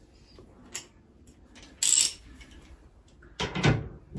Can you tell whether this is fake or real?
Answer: real